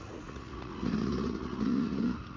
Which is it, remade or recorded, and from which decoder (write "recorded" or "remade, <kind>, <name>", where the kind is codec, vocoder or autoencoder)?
remade, vocoder, Vocos